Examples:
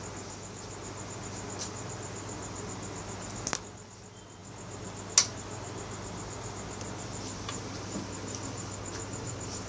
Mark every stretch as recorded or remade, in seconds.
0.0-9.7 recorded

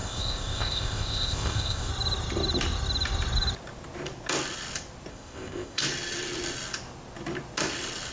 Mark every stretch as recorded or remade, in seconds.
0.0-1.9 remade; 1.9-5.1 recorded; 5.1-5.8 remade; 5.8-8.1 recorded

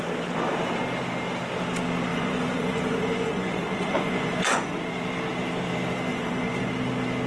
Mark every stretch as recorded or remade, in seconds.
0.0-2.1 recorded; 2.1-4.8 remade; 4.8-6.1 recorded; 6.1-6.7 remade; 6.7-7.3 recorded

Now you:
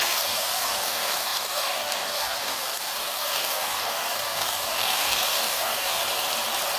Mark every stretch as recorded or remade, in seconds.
0.0-6.0 remade; 6.0-6.8 recorded

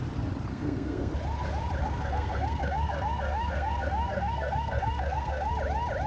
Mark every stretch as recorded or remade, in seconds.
0.0-0.5 recorded; 0.5-1.1 remade; 1.1-1.8 recorded; 1.8-5.5 remade; 5.5-6.1 recorded

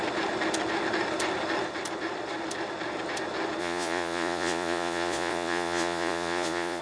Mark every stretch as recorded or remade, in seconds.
0.0-3.6 recorded; 3.6-6.8 remade